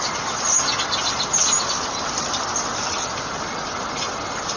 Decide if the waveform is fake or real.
real